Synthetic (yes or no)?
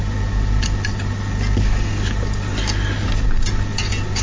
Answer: no